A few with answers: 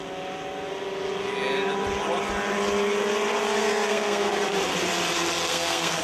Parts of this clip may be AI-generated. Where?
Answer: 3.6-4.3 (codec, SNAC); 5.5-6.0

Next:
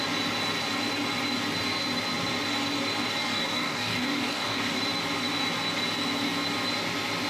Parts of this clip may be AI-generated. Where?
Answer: 3.2-4.8 (codec, DAC)

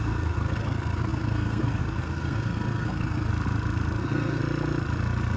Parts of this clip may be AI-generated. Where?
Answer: 0.0-3.3 (codec, SNAC); 4.0-4.4

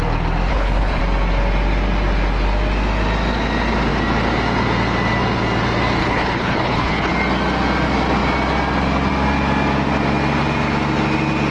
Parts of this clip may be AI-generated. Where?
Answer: 0.5-1.0 (codec, HILCodec); 6.0-7.1

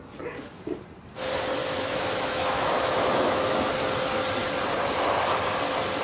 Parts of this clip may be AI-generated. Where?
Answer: 1.6-3.7 (autoencoder, DAC-VAE)